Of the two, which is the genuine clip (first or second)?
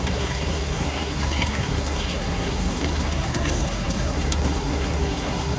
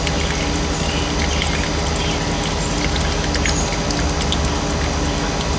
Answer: second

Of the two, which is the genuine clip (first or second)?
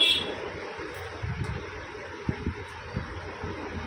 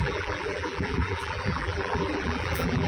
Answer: first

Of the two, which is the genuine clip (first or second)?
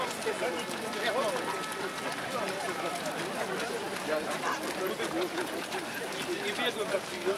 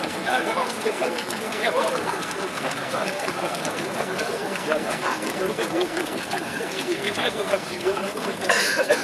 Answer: first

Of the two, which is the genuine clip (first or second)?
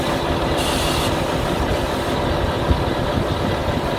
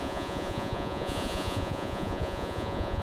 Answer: first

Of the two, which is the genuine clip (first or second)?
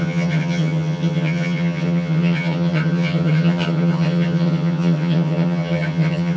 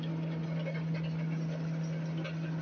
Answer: second